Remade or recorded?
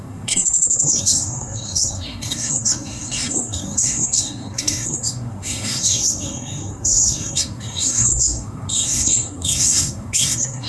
remade